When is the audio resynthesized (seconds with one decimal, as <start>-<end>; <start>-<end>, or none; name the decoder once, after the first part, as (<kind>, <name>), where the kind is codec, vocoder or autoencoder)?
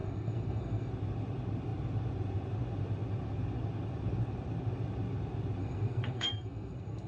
0.0-0.9 (codec, SNAC); 5.6-7.1